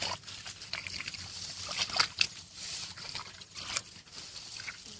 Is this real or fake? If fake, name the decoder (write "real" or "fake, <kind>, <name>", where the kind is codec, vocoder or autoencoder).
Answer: real